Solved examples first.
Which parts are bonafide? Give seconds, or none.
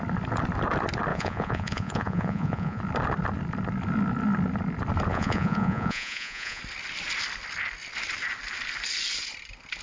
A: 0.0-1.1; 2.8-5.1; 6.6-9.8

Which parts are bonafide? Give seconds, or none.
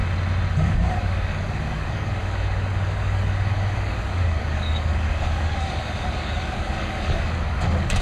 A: 0.0-0.5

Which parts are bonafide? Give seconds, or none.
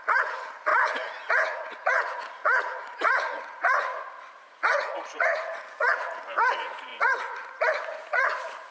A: none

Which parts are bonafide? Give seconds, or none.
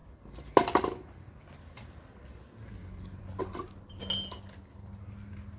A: 0.0-5.6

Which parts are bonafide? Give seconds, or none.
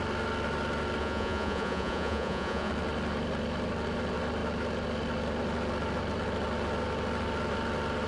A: 0.0-1.0; 2.7-8.1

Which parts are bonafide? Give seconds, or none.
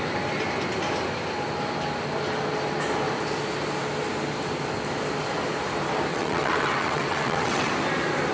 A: 0.0-6.1; 7.7-8.3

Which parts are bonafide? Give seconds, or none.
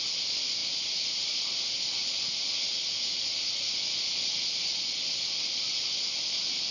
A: 0.0-6.7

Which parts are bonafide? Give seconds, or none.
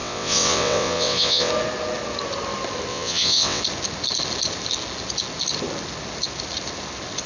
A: 1.5-2.9; 3.6-7.3